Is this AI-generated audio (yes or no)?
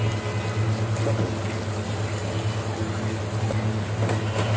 no